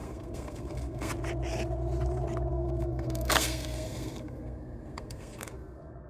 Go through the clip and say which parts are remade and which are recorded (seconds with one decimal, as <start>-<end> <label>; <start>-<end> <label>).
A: 0.0-1.1 remade; 1.1-2.5 recorded; 2.5-6.1 remade